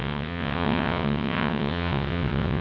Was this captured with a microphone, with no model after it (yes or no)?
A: no